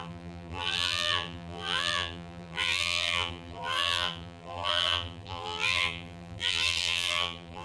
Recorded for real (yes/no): no